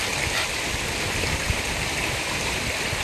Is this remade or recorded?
remade